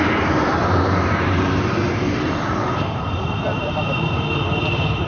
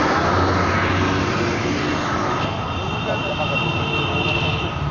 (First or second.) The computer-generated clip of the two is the first